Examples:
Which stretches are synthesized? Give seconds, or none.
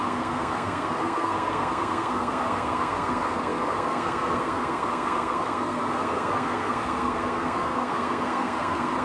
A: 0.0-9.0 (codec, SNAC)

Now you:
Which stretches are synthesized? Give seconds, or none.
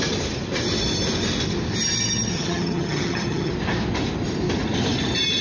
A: 2.3-3.5 (vocoder, HiFi-GAN)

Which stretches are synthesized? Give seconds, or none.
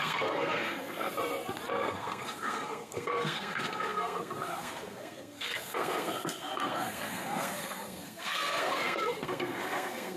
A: 0.0-1.1 (codec, SNAC); 1.7-10.2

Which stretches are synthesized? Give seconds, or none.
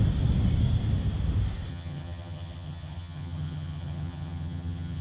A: 1.7-5.0 (vocoder, HiFi-GAN)